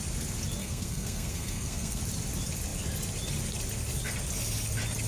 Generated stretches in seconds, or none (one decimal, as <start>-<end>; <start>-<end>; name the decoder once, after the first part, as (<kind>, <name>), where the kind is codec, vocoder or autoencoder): 0.6-2.0 (codec, SNAC)